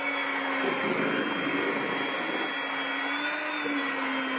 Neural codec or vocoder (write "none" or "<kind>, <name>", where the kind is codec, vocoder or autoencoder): none